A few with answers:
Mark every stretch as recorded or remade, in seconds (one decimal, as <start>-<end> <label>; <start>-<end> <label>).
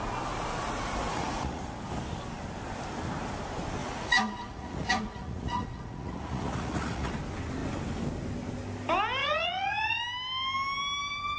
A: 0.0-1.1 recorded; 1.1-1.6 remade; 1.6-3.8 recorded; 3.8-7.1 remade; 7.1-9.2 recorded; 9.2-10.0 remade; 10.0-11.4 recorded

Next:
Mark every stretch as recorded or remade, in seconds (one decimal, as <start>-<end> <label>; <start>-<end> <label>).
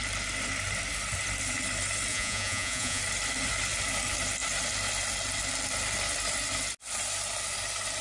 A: 0.0-2.1 recorded; 2.1-3.0 remade; 3.0-8.0 recorded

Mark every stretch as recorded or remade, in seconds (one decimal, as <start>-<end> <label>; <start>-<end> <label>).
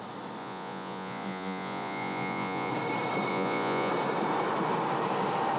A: 0.0-0.4 recorded; 0.4-2.7 remade; 2.7-3.3 recorded; 3.3-3.9 remade; 3.9-5.6 recorded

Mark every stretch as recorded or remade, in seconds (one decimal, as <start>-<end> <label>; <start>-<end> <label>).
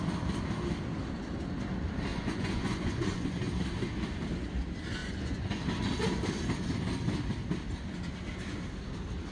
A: 0.0-2.1 recorded; 2.1-3.5 remade; 3.5-5.0 recorded; 5.0-5.6 remade; 5.6-9.3 recorded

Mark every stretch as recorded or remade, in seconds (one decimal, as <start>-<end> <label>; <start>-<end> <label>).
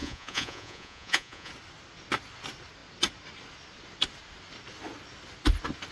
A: 0.0-1.5 remade; 1.5-5.9 recorded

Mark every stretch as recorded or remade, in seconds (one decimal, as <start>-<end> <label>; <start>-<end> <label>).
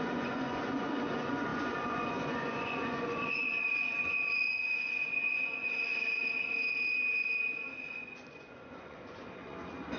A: 0.0-5.9 remade; 5.9-7.8 recorded; 7.8-10.0 remade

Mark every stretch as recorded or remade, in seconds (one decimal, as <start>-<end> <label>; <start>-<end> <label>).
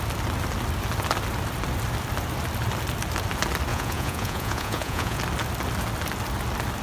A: 0.0-3.7 recorded; 3.7-5.2 remade; 5.2-6.8 recorded